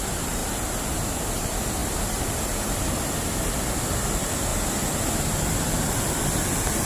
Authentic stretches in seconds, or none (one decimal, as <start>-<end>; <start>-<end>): 0.4-1.1; 1.8-3.4; 4.5-5.4

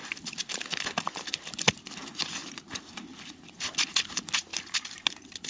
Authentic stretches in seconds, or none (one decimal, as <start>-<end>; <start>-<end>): 0.0-4.5; 5.0-5.5

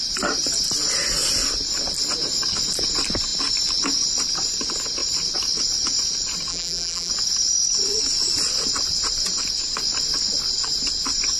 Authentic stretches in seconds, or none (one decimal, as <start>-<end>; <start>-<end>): 0.0-6.5; 7.1-11.4

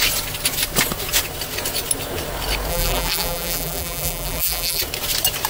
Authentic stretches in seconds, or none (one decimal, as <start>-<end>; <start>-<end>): 0.0-2.7; 4.8-5.5